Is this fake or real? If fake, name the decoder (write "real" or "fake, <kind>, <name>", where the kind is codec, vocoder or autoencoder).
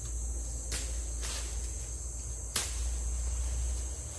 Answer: real